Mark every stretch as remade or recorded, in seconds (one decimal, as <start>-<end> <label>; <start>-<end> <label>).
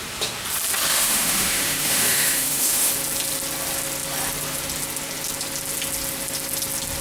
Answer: 0.0-0.9 recorded; 0.9-2.9 remade; 2.9-7.0 recorded